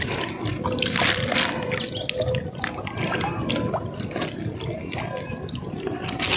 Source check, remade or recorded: recorded